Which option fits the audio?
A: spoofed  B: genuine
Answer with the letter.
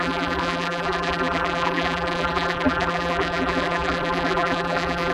A